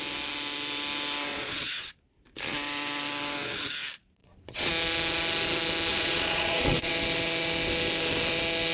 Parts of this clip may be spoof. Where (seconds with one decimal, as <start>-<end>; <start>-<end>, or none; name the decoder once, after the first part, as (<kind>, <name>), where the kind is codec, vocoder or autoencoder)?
1.3-1.9 (vocoder, Vocos); 4.2-4.7; 5.9-6.9